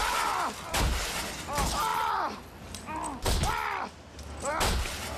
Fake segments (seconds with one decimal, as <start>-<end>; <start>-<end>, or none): 0.0-1.2; 1.9-4.5